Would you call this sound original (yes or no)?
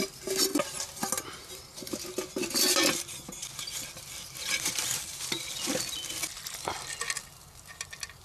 yes